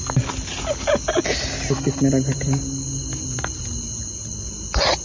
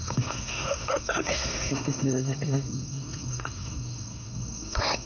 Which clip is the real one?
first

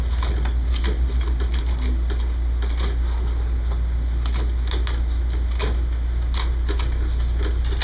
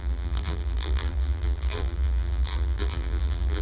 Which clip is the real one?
first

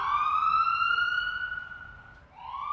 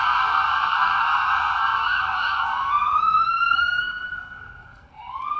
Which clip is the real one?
first